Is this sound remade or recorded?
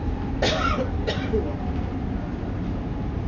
recorded